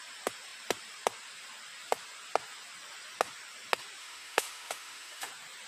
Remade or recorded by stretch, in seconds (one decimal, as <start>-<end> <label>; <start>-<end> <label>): 0.0-4.0 recorded; 4.0-5.3 remade; 5.3-5.7 recorded